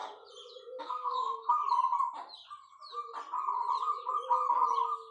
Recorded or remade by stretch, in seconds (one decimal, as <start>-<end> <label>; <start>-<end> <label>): 0.0-0.8 recorded; 0.8-1.6 remade; 1.6-5.1 recorded